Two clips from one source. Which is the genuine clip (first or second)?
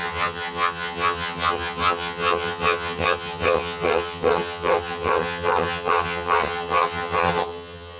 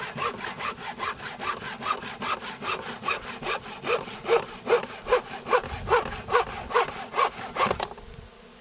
second